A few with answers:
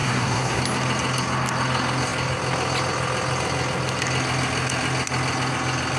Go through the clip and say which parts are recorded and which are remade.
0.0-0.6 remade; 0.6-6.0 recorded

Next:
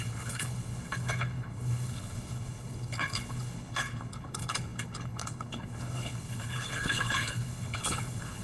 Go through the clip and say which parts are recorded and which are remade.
0.0-8.4 remade

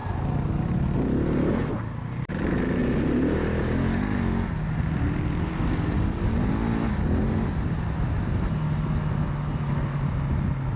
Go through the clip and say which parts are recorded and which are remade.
0.0-10.8 recorded